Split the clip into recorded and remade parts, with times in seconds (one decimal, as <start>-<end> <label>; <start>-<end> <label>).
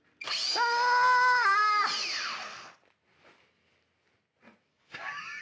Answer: 0.0-4.7 recorded; 4.7-5.4 remade